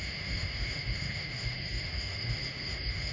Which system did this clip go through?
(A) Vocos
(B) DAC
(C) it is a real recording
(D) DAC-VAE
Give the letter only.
D